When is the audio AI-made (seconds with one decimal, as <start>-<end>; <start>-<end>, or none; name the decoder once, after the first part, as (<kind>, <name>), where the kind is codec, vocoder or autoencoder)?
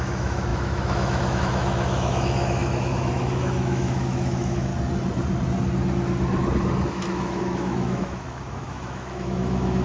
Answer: 0.0-4.7 (autoencoder, DAC-VAE); 6.9-9.8